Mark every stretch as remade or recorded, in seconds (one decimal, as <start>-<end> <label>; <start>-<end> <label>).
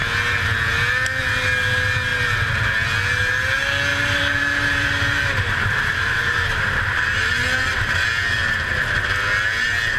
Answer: 0.0-3.9 recorded; 3.9-7.9 remade; 7.9-10.0 recorded